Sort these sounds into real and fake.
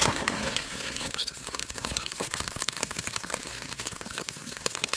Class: fake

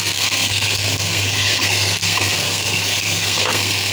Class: fake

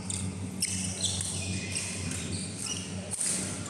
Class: real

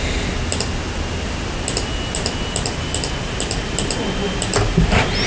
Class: real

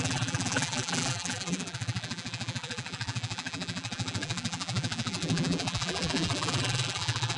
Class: fake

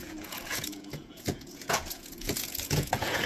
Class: fake